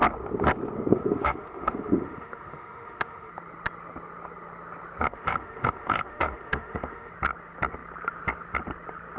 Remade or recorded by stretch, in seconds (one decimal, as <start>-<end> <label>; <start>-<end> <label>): 0.0-0.9 recorded; 0.9-3.3 remade; 3.3-5.1 recorded; 5.1-7.1 remade; 7.1-9.2 recorded